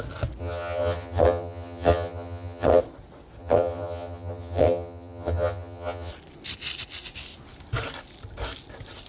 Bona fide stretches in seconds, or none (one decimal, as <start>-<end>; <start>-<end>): 0.0-0.4; 2.8-3.4; 6.1-9.1